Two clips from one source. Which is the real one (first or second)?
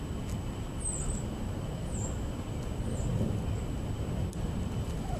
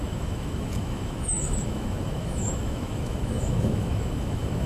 first